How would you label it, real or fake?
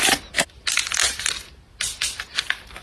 real